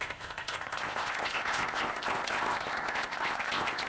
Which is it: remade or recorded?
remade